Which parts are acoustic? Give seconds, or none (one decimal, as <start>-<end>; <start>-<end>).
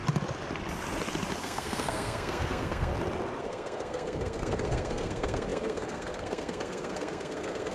0.0-1.4; 2.9-3.4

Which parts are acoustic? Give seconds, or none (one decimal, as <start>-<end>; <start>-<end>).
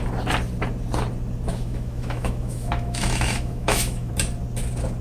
0.0-1.5; 4.1-5.0